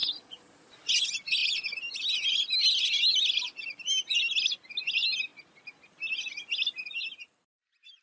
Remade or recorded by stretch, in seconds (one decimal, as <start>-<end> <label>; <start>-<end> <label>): 0.0-8.0 recorded